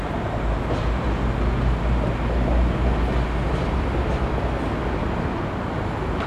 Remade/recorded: recorded